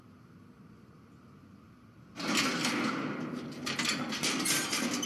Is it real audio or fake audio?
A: real